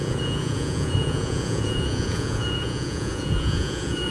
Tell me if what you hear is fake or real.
fake